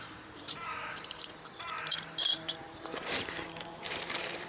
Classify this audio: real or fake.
fake